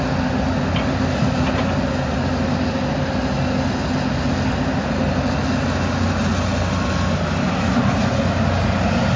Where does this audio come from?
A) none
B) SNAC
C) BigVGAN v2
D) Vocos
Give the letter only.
A